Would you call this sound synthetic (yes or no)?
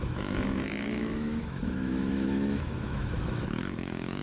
yes